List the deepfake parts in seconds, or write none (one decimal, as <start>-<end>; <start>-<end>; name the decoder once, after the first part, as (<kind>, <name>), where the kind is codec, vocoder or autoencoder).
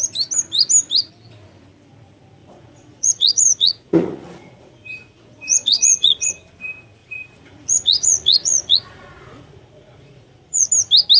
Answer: 2.4-6.3 (vocoder, Vocos); 7.0-10.7